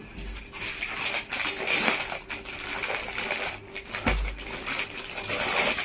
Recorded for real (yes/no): yes